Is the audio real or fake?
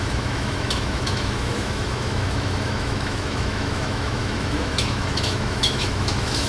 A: fake